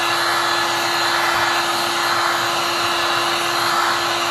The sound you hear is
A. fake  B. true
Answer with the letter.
B